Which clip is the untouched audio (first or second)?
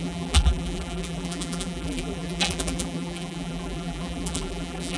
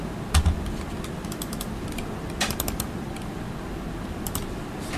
second